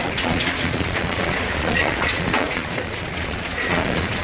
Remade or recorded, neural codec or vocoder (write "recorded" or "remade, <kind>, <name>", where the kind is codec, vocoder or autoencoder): remade, vocoder, Vocos